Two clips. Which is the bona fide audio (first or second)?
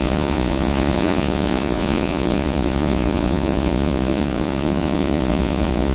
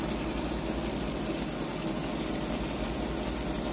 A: second